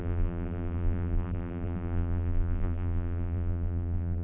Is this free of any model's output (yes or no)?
no